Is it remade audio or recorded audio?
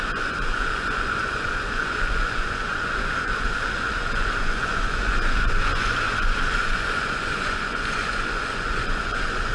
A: remade